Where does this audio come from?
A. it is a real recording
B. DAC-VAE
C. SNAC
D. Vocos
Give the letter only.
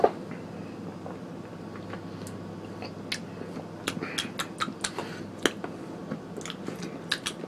A